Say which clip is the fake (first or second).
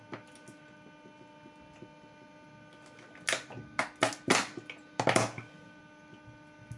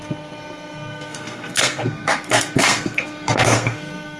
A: second